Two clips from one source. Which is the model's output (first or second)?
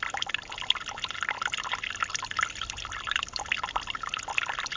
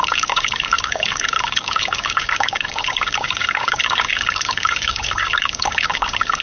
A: second